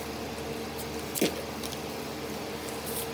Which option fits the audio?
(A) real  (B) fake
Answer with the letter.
A